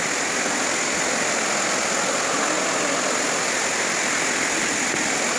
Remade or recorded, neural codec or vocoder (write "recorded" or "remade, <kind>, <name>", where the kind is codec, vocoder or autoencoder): recorded